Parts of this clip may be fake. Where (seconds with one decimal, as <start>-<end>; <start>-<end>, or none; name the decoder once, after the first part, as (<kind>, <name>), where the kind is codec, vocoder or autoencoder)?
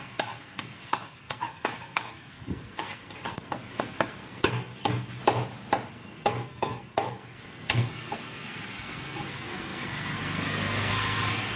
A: 0.0-5.2 (codec, SNAC); 5.9-11.6